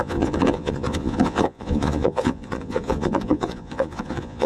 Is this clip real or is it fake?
fake